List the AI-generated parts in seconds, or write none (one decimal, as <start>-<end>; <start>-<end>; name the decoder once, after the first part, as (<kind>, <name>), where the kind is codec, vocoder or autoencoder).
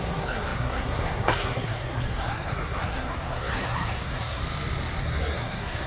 0.0-4.4 (codec, SNAC); 5.0-5.9